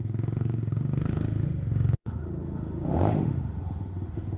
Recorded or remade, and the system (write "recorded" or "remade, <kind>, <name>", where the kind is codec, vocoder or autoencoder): remade, autoencoder, DAC-VAE